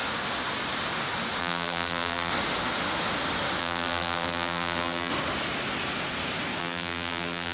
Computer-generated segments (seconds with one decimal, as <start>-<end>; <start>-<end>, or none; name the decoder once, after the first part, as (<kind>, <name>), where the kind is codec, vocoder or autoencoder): 1.4-2.3 (vocoder, BigVGAN v2); 3.6-5.1; 6.6-7.5